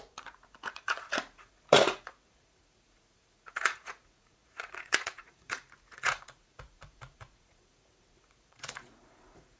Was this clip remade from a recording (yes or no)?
yes